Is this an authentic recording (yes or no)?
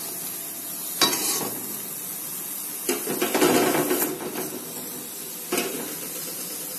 yes